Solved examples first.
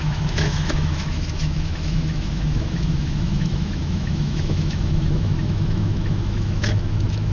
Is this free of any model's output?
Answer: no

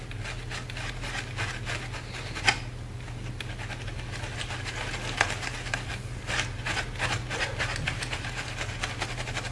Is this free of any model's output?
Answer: yes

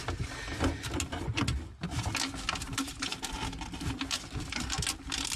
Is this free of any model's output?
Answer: yes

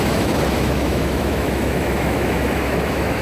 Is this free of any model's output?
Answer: no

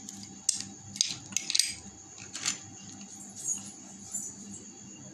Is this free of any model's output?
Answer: yes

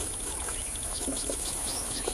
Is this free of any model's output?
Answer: no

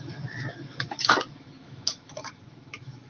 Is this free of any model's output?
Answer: no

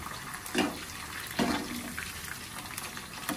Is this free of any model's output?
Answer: yes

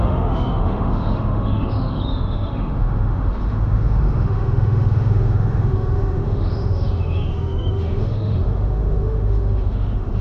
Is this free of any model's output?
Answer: no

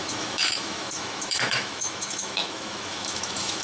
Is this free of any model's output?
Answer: no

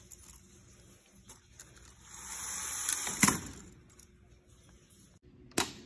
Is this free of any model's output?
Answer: yes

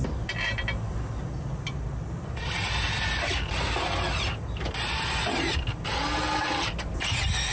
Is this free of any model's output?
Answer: yes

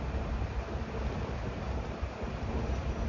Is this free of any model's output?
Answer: yes